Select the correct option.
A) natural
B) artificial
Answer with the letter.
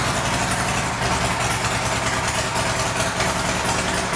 A